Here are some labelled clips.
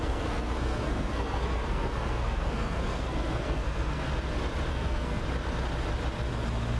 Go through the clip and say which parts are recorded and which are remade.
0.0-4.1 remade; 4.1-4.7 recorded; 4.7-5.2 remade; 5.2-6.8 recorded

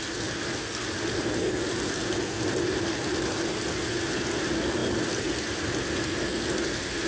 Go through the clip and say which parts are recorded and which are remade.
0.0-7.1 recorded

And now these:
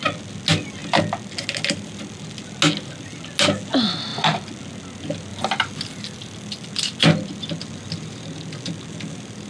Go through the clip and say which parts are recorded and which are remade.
0.0-5.3 recorded; 5.3-6.7 remade; 6.7-9.5 recorded

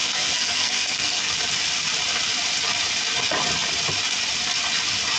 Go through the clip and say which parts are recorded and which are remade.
0.0-1.3 remade; 1.3-5.2 recorded